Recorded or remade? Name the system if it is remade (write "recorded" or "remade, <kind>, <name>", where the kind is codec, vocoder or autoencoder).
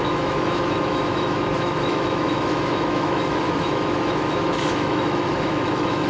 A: remade, autoencoder, DAC-VAE